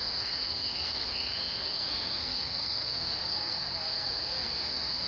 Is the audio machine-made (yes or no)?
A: yes